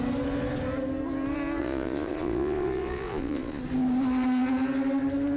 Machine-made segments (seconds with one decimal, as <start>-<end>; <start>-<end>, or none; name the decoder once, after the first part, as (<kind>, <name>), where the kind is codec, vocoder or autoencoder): 1.6-3.6 (vocoder, Vocos)